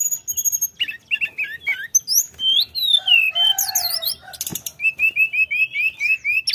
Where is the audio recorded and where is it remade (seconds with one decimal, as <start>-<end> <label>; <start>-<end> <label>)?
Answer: 0.0-6.5 recorded